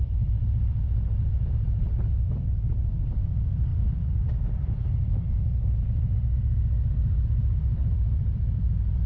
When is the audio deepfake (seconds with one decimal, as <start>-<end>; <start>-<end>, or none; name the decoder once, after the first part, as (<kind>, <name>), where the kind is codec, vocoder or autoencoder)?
0.0-9.1 (vocoder, BigVGAN v2)